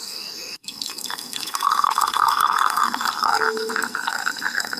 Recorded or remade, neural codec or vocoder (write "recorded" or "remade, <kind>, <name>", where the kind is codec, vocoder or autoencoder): remade, codec, SNAC